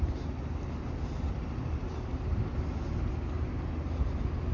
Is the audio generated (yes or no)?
no